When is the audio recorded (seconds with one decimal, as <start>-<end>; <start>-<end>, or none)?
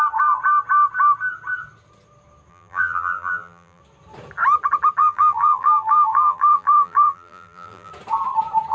0.0-2.5; 3.8-5.0; 7.9-8.7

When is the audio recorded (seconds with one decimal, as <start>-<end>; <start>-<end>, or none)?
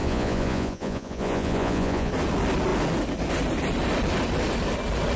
2.1-5.2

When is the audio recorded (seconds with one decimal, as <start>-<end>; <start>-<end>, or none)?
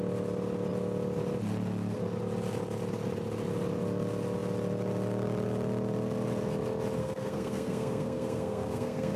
0.0-7.0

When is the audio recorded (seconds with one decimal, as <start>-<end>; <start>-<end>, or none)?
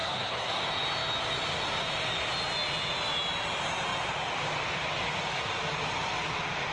0.6-6.7